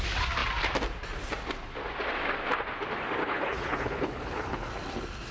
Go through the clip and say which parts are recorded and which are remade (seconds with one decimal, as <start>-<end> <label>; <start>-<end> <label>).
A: 0.0-3.2 recorded; 3.2-4.7 remade; 4.7-5.3 recorded